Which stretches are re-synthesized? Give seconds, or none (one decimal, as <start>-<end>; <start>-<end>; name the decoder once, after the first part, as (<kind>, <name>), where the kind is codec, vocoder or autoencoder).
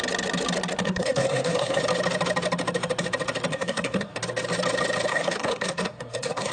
0.8-1.8 (codec, SNAC); 3.5-4.2; 5.1-6.5